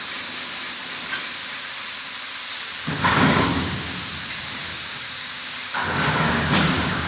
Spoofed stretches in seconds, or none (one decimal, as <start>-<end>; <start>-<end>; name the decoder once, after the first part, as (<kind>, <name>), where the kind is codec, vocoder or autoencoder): 2.5-4.1 (codec, DAC); 4.6-7.1